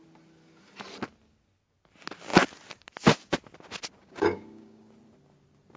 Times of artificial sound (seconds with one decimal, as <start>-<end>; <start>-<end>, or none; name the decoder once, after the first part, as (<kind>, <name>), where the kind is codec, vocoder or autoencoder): 4.0-4.8 (codec, DAC)